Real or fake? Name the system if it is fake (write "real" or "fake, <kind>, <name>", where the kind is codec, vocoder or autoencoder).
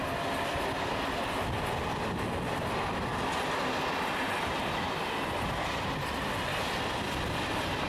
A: real